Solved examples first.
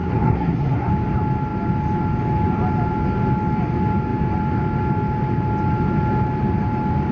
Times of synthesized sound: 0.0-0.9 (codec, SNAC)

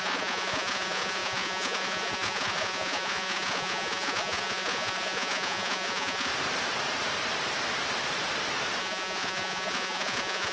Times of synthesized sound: 0.0-6.3 (vocoder, Vocos); 8.8-10.5

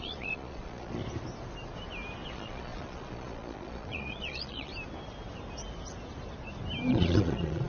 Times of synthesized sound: 0.0-1.0 (vocoder, Vocos); 2.3-4.7; 6.9-7.7